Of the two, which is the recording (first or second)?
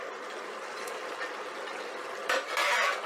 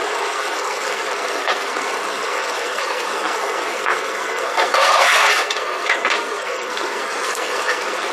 first